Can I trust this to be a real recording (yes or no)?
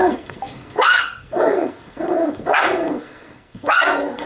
no